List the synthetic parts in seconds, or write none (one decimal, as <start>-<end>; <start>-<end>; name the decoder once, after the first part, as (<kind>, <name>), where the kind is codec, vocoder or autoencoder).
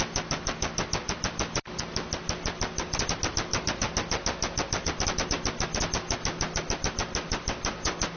none